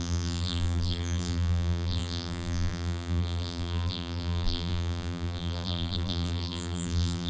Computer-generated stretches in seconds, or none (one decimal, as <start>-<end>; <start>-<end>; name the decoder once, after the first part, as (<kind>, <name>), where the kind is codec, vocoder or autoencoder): 0.0-7.3 (vocoder, BigVGAN v2)